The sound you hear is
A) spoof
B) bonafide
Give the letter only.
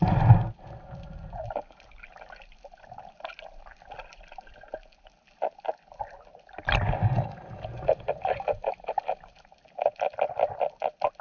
B